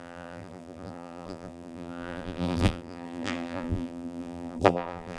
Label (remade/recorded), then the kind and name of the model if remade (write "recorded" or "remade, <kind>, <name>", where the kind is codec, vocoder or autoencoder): remade, vocoder, BigVGAN v2